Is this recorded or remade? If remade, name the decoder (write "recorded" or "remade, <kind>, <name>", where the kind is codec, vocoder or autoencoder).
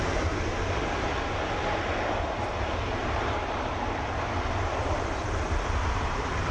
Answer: remade, vocoder, BigVGAN v2